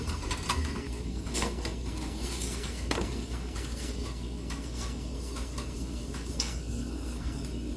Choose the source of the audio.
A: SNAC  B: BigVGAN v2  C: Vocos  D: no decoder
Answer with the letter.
A